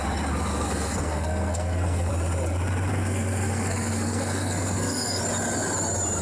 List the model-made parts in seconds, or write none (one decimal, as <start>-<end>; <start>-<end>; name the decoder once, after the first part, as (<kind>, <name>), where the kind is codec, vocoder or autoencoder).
0.5-2.1 (codec, SNAC); 2.9-5.2